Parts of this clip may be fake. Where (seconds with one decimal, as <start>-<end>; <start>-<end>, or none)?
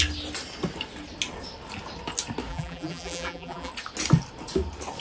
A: 2.5-3.7